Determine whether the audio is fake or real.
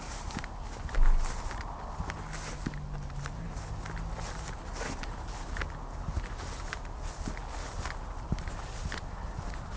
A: real